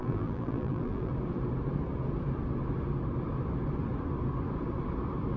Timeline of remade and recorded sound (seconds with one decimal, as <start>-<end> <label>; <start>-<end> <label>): 0.0-1.1 remade; 1.1-5.4 recorded